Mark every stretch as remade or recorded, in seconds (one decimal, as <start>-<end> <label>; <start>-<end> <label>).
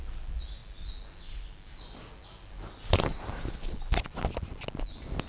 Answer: 0.0-5.3 recorded